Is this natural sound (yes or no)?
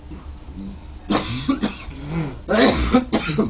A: yes